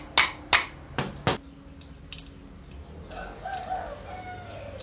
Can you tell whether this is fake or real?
real